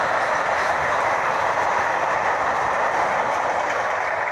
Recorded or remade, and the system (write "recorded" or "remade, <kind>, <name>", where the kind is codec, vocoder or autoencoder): recorded